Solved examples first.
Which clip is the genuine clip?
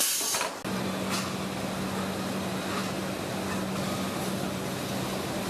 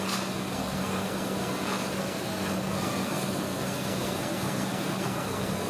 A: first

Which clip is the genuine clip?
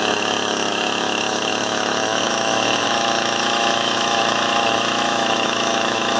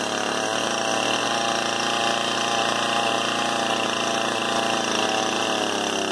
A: second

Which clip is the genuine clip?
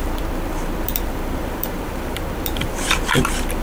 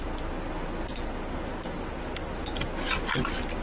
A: second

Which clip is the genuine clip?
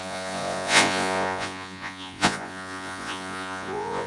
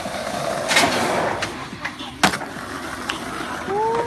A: second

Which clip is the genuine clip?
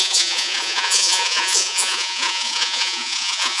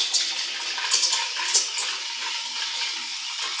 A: second